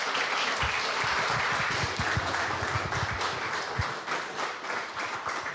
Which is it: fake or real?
real